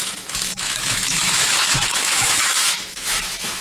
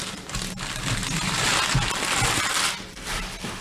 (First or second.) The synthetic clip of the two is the first